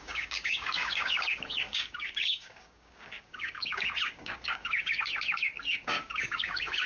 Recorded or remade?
remade